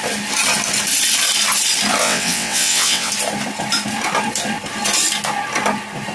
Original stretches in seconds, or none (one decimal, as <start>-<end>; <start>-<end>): 0.0-2.0; 3.1-6.1